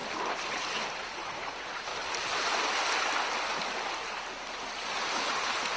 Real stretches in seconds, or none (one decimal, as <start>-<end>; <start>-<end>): 0.0-1.0; 1.9-5.3

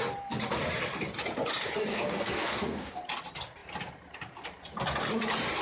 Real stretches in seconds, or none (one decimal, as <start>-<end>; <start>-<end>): 0.0-1.9; 2.9-5.6

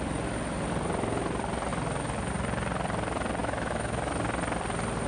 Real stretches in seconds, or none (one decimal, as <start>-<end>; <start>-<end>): 0.0-3.4; 4.1-5.1

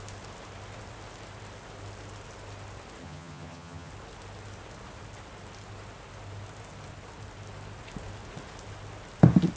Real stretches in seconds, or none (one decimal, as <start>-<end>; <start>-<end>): 0.0-3.0; 3.9-9.6

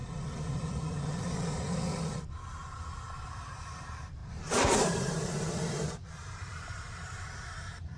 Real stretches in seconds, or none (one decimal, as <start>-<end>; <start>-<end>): 0.0-3.4